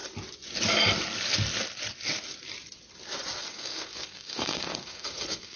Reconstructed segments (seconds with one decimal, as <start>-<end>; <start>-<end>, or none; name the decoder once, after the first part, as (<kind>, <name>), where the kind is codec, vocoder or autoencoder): 3.4-5.6 (codec, SNAC)